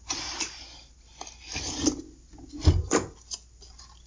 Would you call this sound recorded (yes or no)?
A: yes